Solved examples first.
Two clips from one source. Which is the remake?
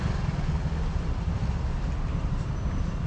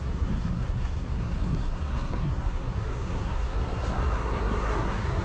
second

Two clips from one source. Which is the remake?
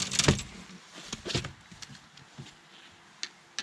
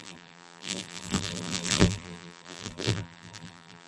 second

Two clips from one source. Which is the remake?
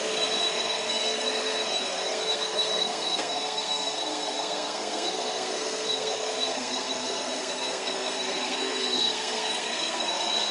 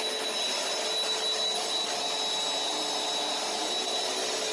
first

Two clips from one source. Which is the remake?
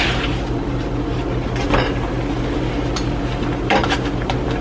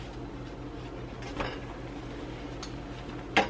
first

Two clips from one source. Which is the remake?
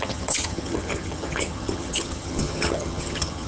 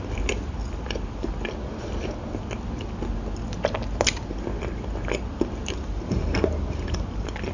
first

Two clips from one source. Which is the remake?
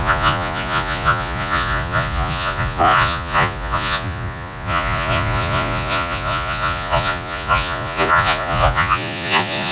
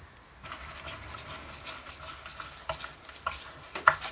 first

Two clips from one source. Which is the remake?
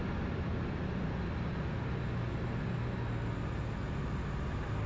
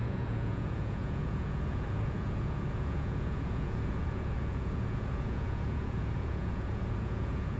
second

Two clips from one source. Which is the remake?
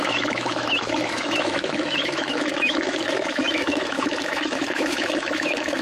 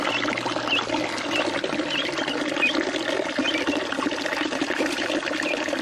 first